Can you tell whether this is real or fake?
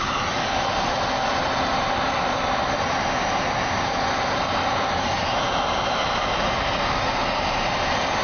fake